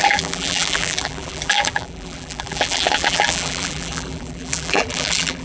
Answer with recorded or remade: remade